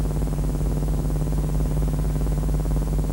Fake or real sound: real